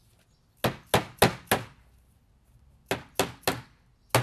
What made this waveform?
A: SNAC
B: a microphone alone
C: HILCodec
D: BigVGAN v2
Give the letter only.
B